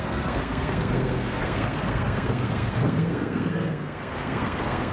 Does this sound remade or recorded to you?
remade